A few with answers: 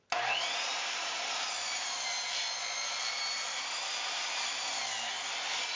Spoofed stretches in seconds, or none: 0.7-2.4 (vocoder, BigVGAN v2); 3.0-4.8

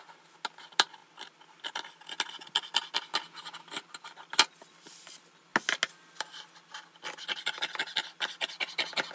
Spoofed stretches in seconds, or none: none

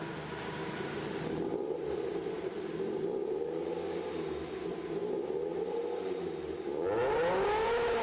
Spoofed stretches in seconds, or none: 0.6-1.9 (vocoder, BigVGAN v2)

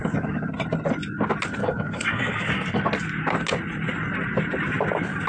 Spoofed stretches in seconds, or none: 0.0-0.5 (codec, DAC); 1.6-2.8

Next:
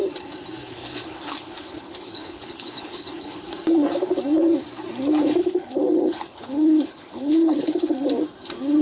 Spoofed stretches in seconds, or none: 0.6-3.4 (codec, HILCodec); 5.4-7.9

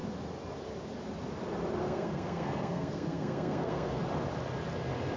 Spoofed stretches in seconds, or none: 1.8-4.0 (codec, SNAC)

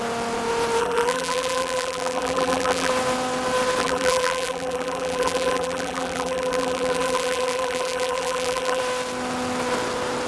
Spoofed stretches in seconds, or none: 0.8-2.9 (vocoder, BigVGAN v2); 3.8-8.8

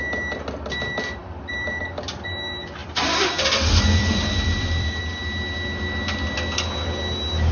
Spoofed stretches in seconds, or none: 1.2-1.8 (vocoder, BigVGAN v2); 2.8-5.0